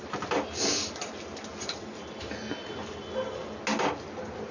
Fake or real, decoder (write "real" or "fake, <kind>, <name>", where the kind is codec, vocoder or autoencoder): real